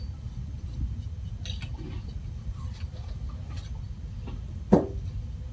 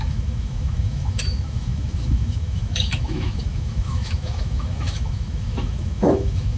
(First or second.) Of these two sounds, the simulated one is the second